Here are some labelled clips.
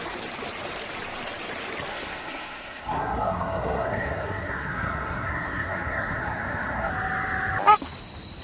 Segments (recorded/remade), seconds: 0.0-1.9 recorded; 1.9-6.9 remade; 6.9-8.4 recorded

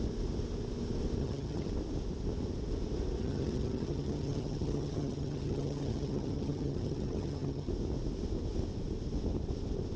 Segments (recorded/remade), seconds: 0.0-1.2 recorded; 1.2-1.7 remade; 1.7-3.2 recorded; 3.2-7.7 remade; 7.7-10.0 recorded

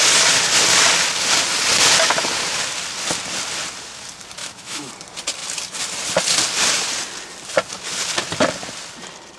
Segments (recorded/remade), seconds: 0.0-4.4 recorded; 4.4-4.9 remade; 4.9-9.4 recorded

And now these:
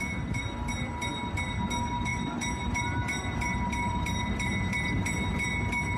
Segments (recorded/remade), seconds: 0.0-1.1 remade; 1.1-1.7 recorded; 1.7-6.0 remade

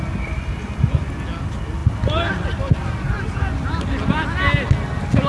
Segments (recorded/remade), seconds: 0.0-5.3 recorded